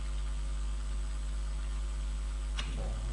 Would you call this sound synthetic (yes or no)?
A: no